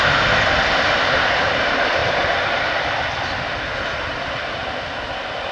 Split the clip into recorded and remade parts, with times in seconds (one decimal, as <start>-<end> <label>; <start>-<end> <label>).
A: 0.0-2.0 remade; 2.0-3.6 recorded; 3.6-5.5 remade